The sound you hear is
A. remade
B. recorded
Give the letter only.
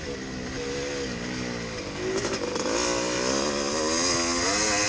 B